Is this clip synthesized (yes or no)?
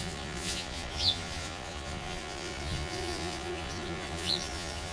yes